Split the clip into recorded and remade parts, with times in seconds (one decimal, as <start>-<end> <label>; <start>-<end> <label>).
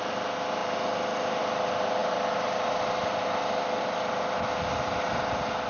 0.0-5.7 recorded